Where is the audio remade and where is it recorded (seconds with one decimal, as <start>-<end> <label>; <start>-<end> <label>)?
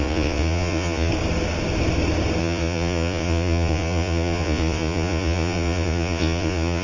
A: 0.0-1.1 remade; 1.1-2.4 recorded; 2.4-6.8 remade